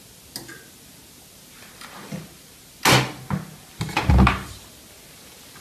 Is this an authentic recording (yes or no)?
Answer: yes